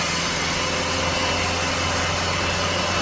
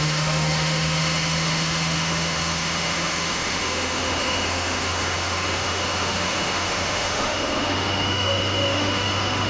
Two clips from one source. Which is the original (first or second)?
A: first